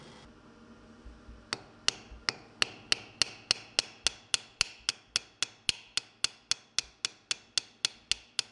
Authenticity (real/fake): real